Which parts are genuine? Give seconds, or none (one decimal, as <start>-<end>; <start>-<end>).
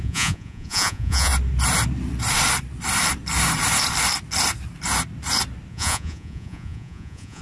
1.3-5.7